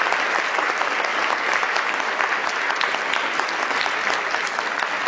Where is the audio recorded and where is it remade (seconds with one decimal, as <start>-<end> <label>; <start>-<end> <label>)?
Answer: 0.0-5.1 recorded

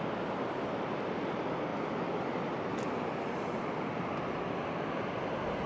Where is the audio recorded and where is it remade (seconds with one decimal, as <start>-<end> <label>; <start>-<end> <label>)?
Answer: 0.0-5.7 recorded

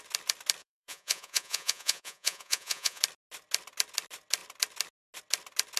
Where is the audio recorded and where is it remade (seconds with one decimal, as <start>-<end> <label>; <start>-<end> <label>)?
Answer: 0.0-0.6 recorded; 0.6-3.0 remade; 3.0-5.8 recorded

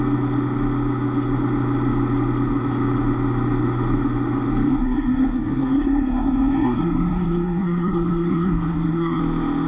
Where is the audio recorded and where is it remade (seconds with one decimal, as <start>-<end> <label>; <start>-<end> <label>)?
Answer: 0.0-4.7 recorded; 4.7-9.2 remade; 9.2-9.7 recorded